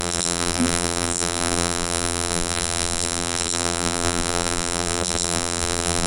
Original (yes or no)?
no